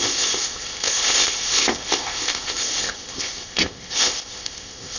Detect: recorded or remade remade